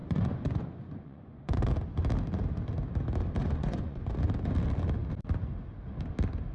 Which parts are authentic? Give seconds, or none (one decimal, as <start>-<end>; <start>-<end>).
1.7-3.4; 4.1-6.5